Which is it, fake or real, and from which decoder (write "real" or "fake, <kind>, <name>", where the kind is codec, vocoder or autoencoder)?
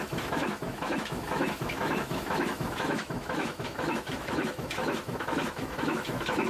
fake, autoencoder, DAC-VAE